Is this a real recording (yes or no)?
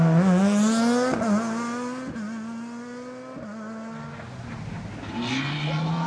yes